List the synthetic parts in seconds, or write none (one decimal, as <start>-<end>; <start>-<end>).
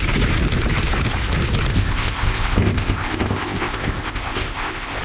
1.7-5.0